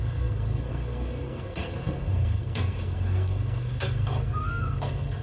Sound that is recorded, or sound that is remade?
remade